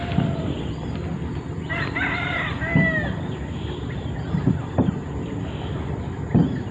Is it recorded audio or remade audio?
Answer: recorded